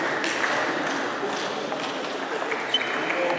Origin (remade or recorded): recorded